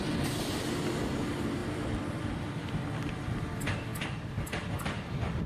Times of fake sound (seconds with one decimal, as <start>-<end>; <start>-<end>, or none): none